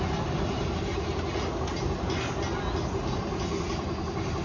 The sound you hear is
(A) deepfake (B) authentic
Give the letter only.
B